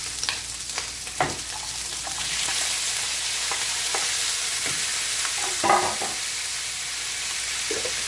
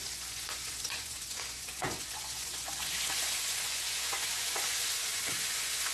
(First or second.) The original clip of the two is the first